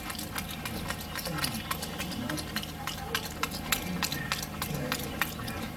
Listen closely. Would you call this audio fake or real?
real